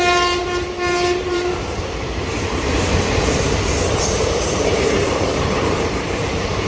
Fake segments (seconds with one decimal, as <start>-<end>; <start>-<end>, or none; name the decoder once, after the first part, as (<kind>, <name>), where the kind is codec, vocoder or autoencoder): 0.0-6.7 (vocoder, BigVGAN v2)